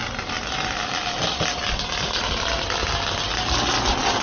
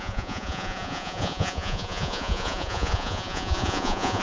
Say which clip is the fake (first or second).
second